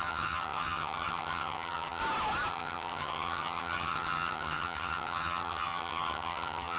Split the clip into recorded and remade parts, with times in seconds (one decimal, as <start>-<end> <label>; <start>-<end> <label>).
0.0-2.0 remade; 2.0-2.5 recorded; 2.5-6.8 remade